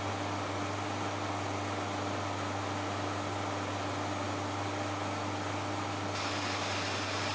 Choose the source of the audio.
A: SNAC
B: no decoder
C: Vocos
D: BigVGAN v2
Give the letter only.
B